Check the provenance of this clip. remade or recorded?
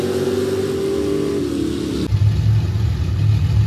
recorded